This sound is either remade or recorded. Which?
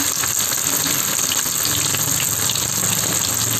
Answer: recorded